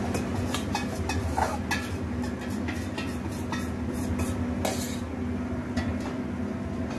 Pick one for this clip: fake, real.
real